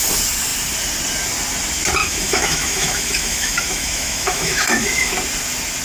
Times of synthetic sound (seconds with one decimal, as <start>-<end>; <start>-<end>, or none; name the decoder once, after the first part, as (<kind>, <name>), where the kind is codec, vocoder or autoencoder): 2.0-5.1 (autoencoder, DAC-VAE)